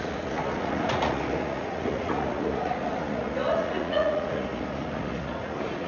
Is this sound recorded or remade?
remade